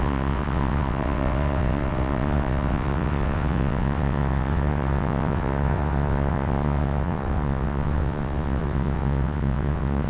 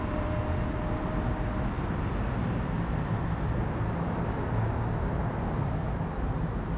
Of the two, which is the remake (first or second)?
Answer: first